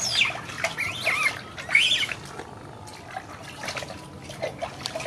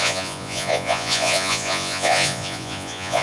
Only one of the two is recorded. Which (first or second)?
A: first